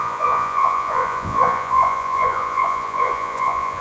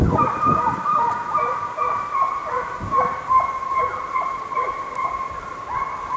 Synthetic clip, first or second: first